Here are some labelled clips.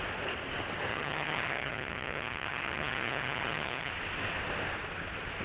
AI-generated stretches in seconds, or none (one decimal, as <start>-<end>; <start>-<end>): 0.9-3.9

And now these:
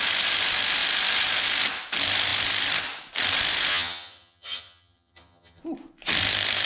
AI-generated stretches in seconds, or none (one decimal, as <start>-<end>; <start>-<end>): 3.7-5.6

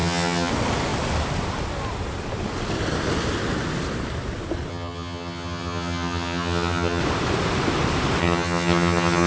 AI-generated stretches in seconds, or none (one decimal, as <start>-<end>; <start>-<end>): 0.0-0.5; 4.7-7.0; 8.2-9.3

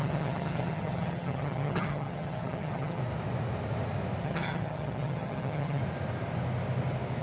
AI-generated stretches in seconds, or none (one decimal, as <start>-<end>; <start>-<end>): 0.0-3.0; 4.2-5.8